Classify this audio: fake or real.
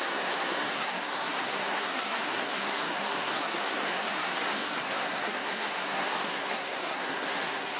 fake